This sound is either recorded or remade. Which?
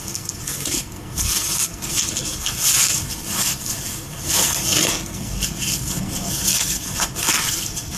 remade